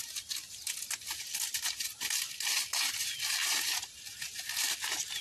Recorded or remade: recorded